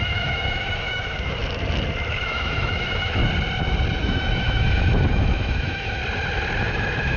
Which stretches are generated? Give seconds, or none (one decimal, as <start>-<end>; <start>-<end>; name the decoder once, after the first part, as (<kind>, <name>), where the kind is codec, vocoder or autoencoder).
0.0-1.4 (autoencoder, DAC-VAE); 2.1-3.2; 4.0-6.0; 6.6-7.2